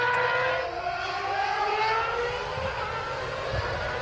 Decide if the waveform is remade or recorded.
recorded